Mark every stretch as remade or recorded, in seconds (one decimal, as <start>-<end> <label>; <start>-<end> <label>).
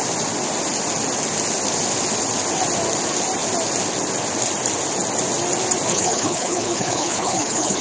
0.0-5.9 recorded; 5.9-7.8 remade